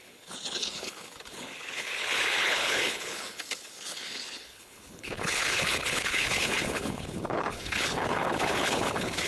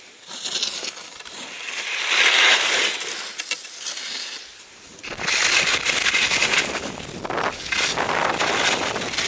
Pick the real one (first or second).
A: second